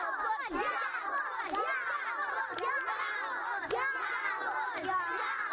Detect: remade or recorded recorded